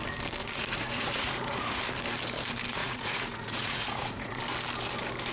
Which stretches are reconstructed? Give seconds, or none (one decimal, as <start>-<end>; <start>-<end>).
0.4-1.8; 2.8-4.4